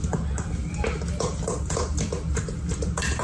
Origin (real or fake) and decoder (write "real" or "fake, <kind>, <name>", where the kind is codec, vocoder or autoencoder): real